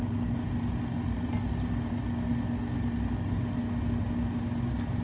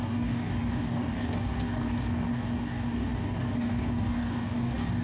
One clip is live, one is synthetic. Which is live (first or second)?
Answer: first